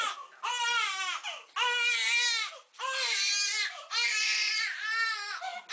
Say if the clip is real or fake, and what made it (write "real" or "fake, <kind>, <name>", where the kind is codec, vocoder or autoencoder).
real